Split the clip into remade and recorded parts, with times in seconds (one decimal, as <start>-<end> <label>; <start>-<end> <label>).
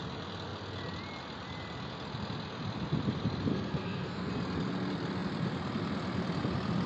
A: 0.0-3.5 recorded; 3.5-4.3 remade; 4.3-6.9 recorded